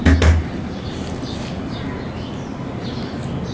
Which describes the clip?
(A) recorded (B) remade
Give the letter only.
A